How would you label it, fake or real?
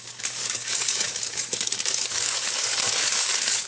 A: fake